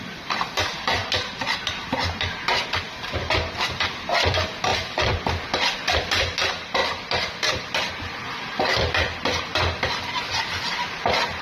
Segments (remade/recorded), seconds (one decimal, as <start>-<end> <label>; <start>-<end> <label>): 0.0-4.7 recorded; 4.7-5.3 remade; 5.3-11.4 recorded